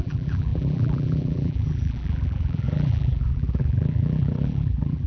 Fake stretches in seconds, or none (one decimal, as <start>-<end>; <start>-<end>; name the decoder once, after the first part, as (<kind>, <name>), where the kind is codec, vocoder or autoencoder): 0.0-5.1 (vocoder, BigVGAN v2)